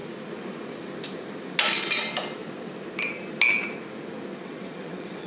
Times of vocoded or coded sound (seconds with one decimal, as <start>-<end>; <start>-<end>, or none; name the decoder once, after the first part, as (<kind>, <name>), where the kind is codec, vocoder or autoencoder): 4.3-5.3 (vocoder, WaveNeXt)